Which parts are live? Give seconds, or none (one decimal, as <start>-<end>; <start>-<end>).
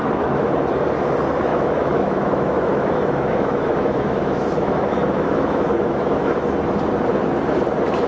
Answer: 0.5-1.5; 6.4-8.1